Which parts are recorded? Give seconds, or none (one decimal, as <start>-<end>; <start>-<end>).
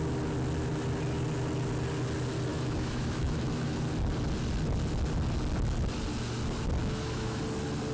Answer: 0.0-2.5; 3.9-6.8; 7.4-7.9